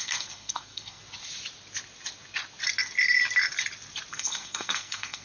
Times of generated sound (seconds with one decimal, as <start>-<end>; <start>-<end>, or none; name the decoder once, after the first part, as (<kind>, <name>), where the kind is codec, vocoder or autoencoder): 0.0-1.0 (codec, SNAC); 4.1-5.2